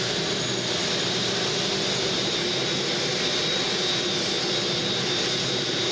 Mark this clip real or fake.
real